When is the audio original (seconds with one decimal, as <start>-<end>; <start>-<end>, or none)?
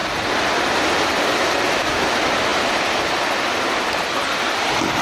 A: 2.5-4.0